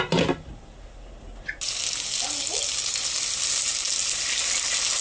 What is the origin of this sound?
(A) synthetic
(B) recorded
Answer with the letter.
B